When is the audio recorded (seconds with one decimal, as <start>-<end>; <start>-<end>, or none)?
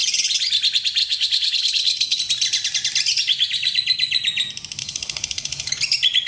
0.0-1.0; 2.2-4.8; 5.7-6.3